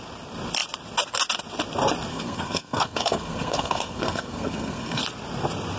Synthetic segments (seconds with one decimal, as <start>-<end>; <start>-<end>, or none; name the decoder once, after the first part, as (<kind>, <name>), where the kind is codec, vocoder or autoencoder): 2.1-5.0 (codec, SNAC)